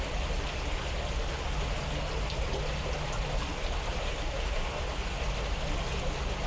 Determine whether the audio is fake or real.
real